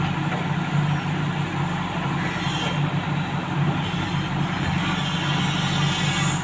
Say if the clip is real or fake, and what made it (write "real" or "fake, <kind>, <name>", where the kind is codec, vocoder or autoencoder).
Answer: real